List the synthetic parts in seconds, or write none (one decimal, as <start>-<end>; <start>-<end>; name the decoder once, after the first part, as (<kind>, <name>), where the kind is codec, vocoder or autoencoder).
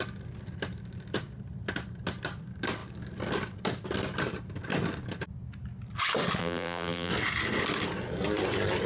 6.4-7.1 (vocoder, BigVGAN v2)